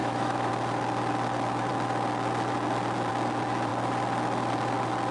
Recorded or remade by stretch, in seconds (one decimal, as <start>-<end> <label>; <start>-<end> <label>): 0.0-0.5 remade; 0.5-5.1 recorded